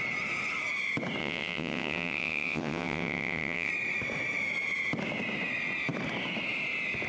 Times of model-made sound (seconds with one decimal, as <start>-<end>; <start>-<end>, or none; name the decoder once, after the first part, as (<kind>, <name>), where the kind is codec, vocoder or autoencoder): 1.2-3.7 (vocoder, WaveNeXt)